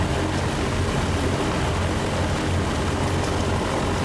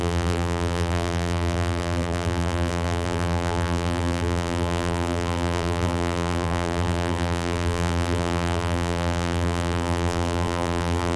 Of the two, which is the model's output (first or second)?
second